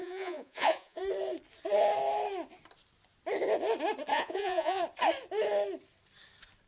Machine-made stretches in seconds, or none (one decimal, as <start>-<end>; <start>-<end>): 0.0-1.0; 4.1-4.8